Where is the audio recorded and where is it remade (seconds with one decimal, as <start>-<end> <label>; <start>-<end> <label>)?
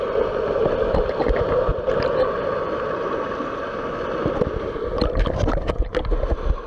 0.0-6.7 recorded